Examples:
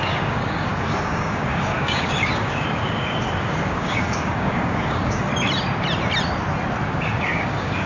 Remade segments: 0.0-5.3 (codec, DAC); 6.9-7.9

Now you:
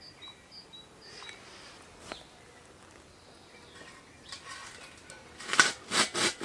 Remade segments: none

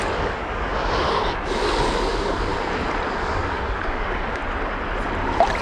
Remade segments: 0.0-2.5 (codec, DAC); 3.2-4.4